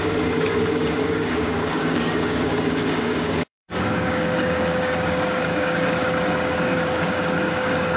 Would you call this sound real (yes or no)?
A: no